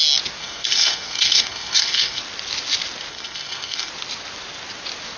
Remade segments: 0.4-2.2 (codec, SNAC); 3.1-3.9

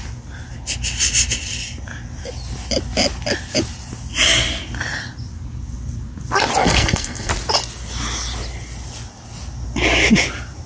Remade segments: 6.6-7.3 (codec, SNAC)

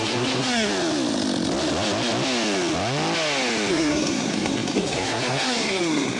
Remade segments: 0.0-0.7 (codec, SNAC); 3.7-6.2

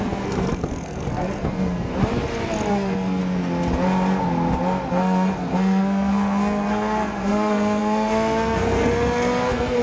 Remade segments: 0.0-1.9 (codec, SNAC); 2.7-3.2; 4.9-9.8

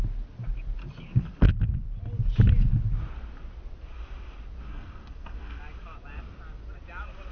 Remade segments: 4.7-5.6 (codec, SNAC)

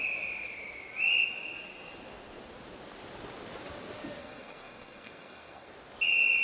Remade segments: 4.2-5.7 (codec, SNAC)

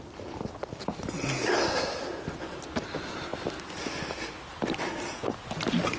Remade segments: none

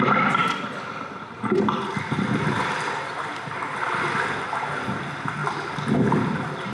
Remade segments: none